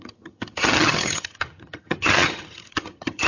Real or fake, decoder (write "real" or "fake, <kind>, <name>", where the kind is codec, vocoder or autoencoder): fake, vocoder, HiFi-GAN